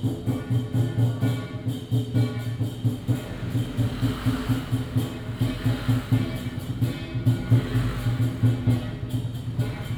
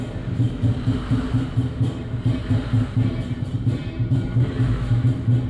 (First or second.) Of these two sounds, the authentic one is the first